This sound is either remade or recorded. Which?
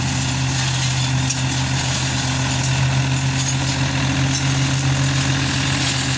recorded